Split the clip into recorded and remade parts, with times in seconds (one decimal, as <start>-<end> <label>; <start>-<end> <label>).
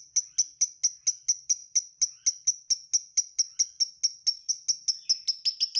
0.0-5.8 recorded